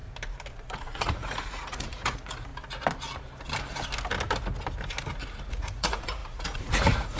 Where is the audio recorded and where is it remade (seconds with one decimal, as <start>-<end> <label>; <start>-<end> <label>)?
0.0-0.5 recorded; 0.5-2.5 remade; 2.5-5.5 recorded; 5.5-7.2 remade